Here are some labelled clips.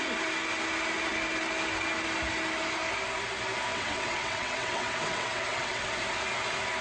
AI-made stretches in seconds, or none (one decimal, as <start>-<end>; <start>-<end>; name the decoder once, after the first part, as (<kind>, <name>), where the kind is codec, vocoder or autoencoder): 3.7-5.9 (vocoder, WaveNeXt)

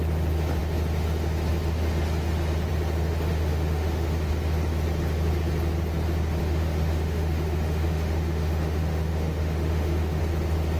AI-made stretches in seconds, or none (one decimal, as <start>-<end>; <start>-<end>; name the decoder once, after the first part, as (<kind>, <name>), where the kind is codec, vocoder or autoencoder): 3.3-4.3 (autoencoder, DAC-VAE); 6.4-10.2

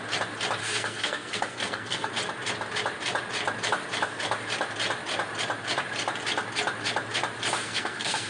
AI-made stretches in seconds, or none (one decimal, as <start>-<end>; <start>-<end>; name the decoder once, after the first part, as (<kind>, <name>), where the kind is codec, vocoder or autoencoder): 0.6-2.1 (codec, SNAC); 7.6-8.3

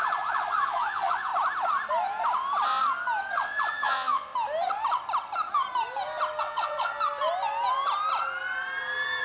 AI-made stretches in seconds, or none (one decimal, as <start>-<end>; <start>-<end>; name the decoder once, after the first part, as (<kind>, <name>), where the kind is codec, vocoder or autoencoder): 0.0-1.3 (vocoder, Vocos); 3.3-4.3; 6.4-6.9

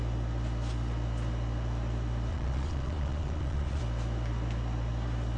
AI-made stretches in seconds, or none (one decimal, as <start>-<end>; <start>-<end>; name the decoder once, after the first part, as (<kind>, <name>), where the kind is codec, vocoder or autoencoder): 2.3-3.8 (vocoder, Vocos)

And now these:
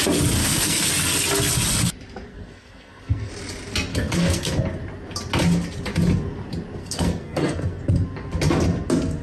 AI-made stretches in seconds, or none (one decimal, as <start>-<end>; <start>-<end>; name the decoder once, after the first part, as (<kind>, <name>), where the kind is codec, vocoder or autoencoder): 0.4-0.9 (codec, SNAC); 2.3-3.3; 3.9-4.6; 6.8-7.8

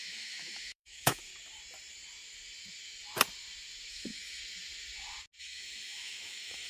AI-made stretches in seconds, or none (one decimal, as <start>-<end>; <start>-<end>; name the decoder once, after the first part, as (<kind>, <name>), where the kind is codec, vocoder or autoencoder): 0.0-1.3 (autoencoder, DAC-VAE); 3.9-4.4; 5.4-6.7